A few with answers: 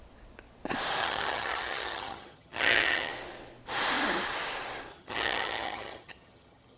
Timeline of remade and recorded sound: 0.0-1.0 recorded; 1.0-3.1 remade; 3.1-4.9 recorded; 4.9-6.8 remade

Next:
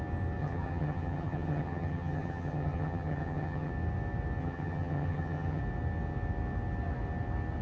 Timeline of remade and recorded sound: 0.0-0.4 recorded; 0.4-3.7 remade; 3.7-4.4 recorded; 4.4-5.6 remade; 5.6-7.6 recorded